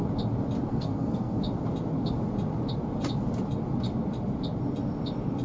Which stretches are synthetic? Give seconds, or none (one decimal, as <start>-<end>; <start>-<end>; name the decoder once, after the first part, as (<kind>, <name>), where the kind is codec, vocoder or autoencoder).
0.7-1.4 (codec, SNAC)